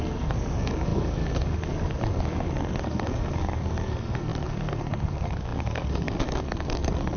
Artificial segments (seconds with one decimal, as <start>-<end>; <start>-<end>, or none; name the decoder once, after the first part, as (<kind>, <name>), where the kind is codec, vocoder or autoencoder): 0.0-7.2 (codec, SNAC)